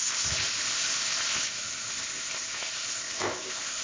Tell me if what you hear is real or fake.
fake